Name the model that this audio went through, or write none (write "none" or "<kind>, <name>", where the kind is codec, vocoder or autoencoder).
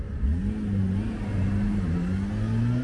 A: none